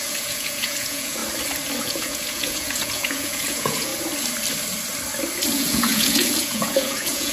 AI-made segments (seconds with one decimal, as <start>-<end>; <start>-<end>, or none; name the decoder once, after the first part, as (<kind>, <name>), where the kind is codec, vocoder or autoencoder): 0.0-1.2 (vocoder, Vocos); 1.8-3.9; 5.5-7.3